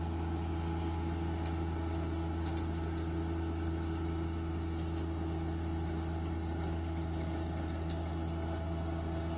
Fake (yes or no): no